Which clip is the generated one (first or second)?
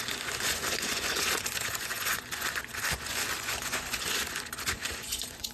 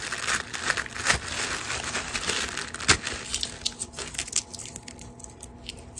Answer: first